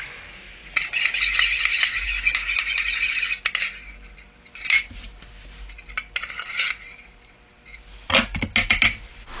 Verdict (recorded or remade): recorded